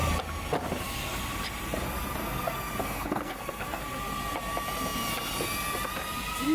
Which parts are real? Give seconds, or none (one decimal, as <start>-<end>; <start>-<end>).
0.0-2.2; 3.8-6.5

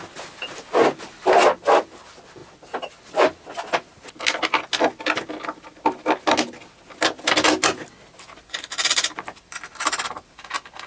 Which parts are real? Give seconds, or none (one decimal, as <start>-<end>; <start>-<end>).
0.0-10.9

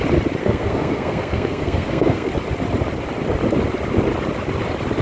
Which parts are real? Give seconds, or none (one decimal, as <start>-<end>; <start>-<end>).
0.0-0.4; 2.3-5.0

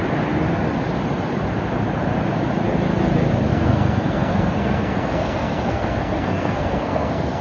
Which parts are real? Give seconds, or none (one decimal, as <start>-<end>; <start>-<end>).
0.0-3.5

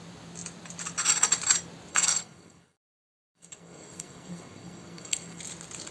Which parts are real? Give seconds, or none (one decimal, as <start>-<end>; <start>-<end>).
0.0-1.9; 5.4-5.9

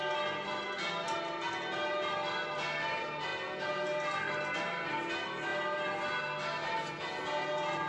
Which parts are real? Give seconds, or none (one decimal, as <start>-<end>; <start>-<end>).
0.0-7.9

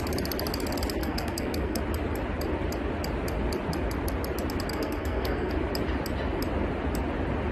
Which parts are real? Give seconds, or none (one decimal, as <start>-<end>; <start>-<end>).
0.0-1.0; 1.8-4.7; 5.5-7.5

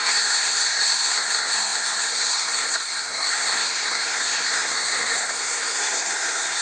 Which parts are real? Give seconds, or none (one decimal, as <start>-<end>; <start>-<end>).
none